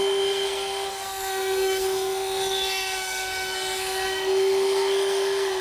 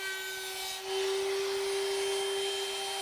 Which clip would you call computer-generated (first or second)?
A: first